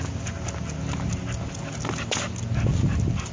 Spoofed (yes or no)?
no